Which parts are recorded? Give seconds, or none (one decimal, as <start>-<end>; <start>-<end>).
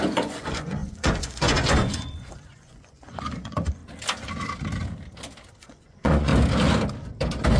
3.8-5.6; 6.3-7.6